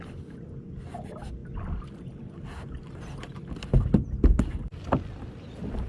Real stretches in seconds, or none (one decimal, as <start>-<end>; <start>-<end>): 0.0-5.9